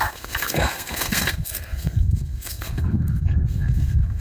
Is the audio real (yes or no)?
no